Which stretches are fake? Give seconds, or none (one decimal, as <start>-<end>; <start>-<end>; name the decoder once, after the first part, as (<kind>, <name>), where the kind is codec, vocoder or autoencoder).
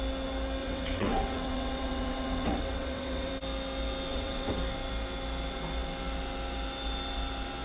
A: 0.6-3.3 (vocoder, WaveNeXt); 4.1-4.6